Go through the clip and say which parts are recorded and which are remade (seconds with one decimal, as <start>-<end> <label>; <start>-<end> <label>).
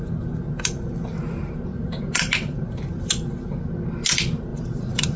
0.0-4.5 recorded; 4.5-5.2 remade